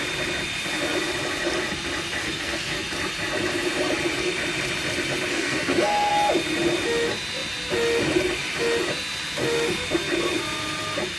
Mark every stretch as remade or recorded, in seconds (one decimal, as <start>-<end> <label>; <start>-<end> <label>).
0.0-2.2 recorded; 2.2-2.8 remade; 2.8-5.3 recorded; 5.3-6.1 remade; 6.1-11.2 recorded

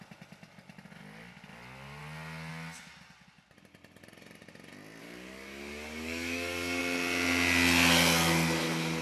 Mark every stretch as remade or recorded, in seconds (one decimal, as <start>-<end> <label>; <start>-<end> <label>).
0.0-5.0 recorded; 5.0-6.8 remade; 6.8-9.0 recorded

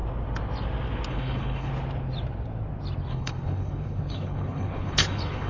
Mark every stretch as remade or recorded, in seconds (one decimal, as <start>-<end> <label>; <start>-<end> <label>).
0.0-1.1 recorded; 1.1-1.7 remade; 1.7-3.1 recorded; 3.1-5.5 remade